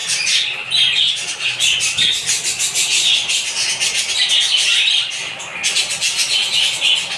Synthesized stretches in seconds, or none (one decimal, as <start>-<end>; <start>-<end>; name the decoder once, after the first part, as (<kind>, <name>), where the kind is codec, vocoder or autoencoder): 4.3-5.5 (vocoder, BigVGAN v2)